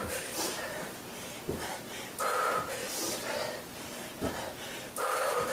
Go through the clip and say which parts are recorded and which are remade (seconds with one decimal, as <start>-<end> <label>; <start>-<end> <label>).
0.0-1.2 remade; 1.2-5.5 recorded